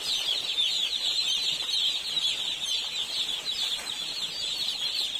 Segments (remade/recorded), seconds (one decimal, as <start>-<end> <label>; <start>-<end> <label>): 0.0-5.2 recorded